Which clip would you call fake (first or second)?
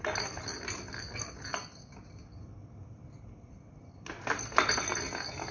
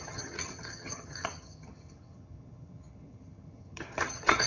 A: second